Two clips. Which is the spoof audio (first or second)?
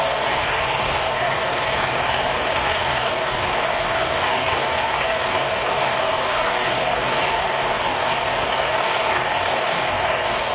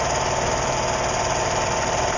first